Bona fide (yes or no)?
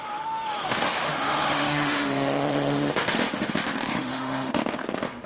no